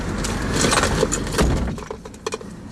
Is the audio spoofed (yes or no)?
no